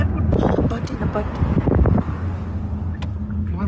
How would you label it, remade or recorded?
recorded